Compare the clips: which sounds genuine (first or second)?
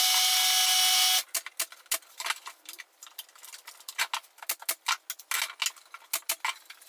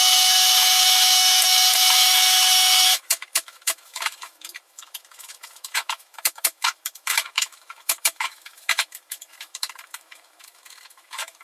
first